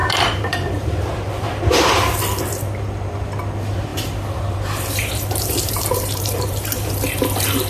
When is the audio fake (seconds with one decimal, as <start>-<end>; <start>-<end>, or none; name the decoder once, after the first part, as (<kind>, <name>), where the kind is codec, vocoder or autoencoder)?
0.0-1.3 (vocoder, BigVGAN v2); 3.9-6.9

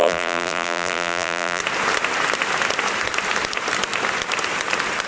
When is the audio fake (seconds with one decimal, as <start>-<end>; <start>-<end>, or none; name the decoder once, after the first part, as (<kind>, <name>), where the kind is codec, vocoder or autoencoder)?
0.0-1.6 (vocoder, BigVGAN v2)

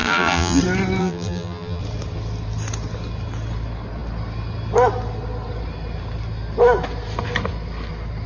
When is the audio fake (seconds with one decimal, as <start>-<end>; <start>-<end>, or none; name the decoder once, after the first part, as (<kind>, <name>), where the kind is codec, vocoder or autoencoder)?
0.0-0.6 (vocoder, BigVGAN v2); 1.0-1.8

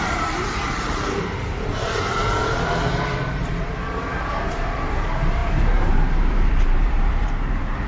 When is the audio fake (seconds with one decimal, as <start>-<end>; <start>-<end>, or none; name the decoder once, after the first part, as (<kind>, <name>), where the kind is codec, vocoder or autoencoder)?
0.0-7.9 (vocoder, BigVGAN v2)

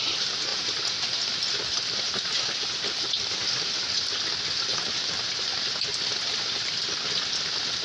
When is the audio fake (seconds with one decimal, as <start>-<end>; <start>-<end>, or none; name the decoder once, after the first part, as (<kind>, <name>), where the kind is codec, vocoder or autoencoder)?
none

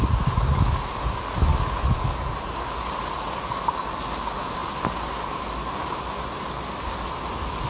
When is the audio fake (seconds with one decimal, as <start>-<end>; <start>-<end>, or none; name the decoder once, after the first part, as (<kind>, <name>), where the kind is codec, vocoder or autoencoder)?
none

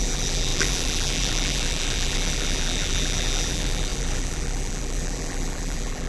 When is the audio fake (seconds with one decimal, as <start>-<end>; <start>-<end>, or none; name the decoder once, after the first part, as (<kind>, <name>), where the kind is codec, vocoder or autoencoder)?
0.0-6.1 (vocoder, BigVGAN v2)

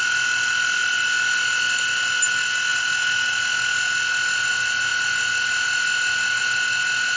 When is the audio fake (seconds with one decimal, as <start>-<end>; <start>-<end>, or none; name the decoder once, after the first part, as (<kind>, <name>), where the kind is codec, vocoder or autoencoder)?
none